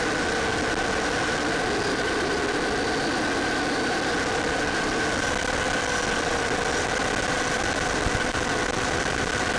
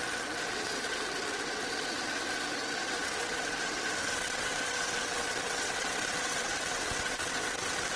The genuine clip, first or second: first